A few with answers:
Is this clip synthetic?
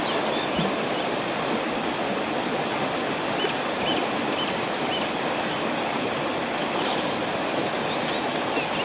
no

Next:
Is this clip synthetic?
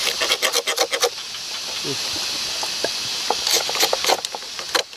no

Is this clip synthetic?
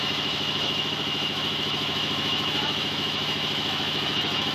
yes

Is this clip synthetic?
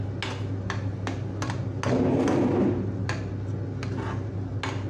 no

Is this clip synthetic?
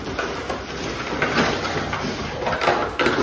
no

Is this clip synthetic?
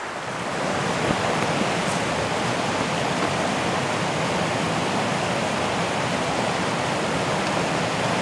no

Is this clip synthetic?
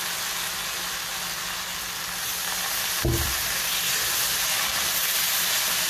no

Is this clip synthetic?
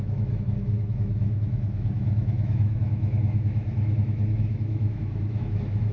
yes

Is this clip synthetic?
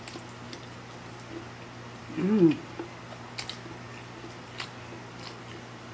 no